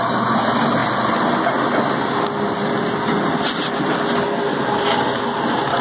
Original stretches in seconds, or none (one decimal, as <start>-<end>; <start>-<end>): 0.0-5.8